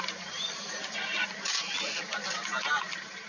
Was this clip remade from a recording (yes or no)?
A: yes